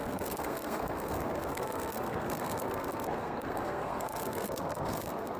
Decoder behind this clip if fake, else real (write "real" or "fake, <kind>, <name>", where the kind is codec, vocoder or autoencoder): fake, codec, SNAC